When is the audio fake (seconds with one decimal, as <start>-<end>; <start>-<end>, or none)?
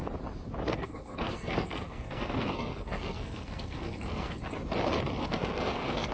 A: 0.7-4.4; 5.2-6.1